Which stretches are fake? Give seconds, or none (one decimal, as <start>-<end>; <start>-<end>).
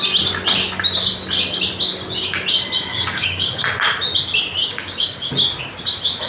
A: 2.9-3.6; 4.6-5.3